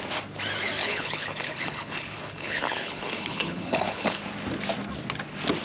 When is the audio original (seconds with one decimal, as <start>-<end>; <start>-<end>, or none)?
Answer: 0.0-0.8; 4.2-5.6